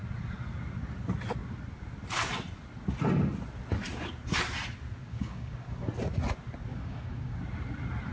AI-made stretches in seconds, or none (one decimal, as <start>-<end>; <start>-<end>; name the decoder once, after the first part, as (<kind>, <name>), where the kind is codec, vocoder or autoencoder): 5.0-5.9 (codec, DAC); 6.7-7.4